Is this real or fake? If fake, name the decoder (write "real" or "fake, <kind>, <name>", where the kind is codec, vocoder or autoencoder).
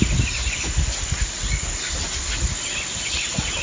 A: real